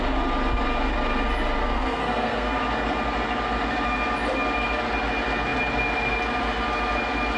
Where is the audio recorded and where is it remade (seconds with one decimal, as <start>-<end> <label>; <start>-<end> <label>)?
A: 0.0-1.6 recorded; 1.6-2.6 remade; 2.6-7.4 recorded